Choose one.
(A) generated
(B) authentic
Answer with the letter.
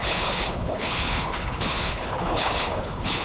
A